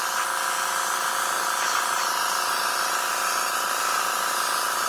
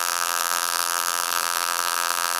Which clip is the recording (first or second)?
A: first